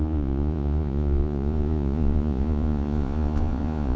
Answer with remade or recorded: remade